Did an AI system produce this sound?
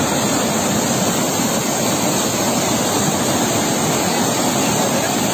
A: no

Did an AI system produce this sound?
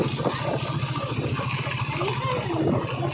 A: no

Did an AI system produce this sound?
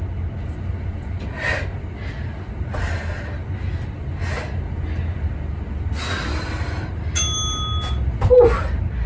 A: no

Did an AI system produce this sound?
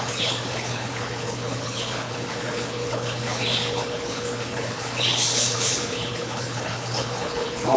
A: yes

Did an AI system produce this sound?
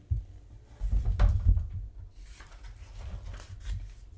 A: no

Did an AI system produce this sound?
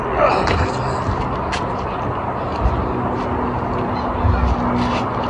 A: no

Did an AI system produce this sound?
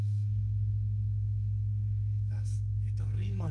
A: yes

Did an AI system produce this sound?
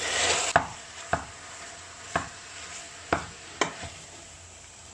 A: yes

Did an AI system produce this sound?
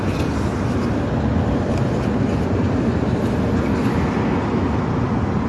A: no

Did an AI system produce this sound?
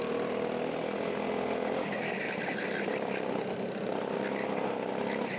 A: no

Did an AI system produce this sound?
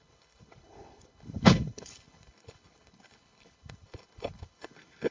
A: yes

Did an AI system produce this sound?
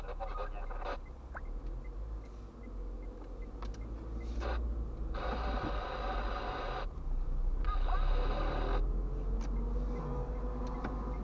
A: no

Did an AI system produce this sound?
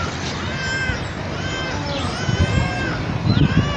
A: no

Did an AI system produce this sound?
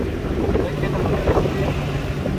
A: no